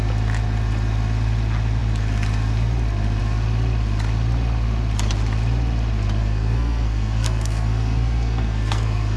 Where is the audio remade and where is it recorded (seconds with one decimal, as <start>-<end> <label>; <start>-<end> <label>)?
0.0-6.2 recorded; 6.2-9.2 remade